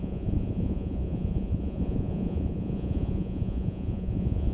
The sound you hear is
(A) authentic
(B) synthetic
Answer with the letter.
B